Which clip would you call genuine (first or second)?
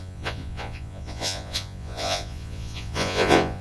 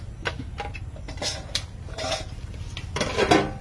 second